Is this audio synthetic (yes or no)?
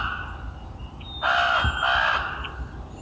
no